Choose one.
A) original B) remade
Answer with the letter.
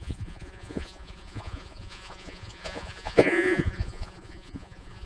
B